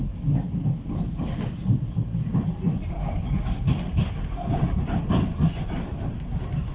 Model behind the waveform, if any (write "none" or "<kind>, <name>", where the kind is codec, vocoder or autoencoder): none